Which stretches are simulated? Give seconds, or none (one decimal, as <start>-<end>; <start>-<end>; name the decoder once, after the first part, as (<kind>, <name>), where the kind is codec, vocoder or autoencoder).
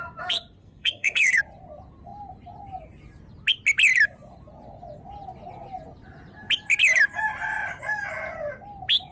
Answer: 0.6-1.4 (codec, SNAC)